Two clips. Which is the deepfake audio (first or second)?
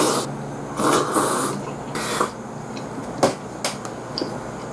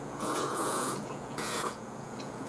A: second